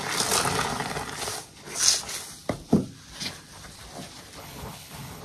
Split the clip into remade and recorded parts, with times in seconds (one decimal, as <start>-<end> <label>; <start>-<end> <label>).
0.0-4.4 recorded; 4.4-5.2 remade